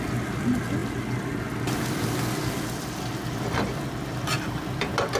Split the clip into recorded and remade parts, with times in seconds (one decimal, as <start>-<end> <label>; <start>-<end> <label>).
0.0-5.2 recorded